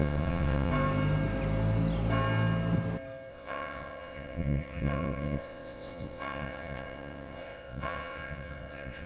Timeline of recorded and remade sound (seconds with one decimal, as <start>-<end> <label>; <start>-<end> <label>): 0.0-0.7 remade; 0.7-3.3 recorded; 3.3-9.1 remade